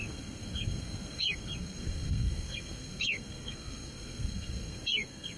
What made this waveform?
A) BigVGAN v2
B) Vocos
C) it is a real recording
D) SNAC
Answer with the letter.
D